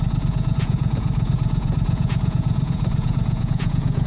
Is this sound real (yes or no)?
no